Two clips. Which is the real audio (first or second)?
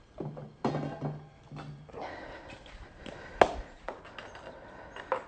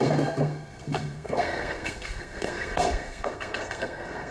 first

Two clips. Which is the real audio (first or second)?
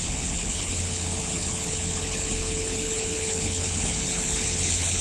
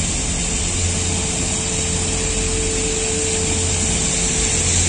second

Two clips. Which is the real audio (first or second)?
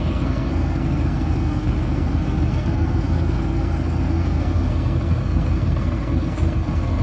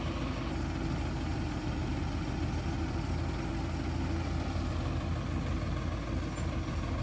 second